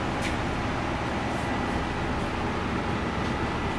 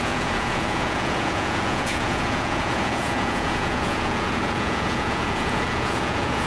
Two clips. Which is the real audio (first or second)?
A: first